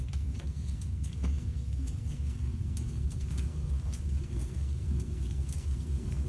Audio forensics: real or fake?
fake